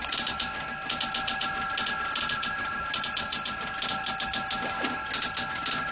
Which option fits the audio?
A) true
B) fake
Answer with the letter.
A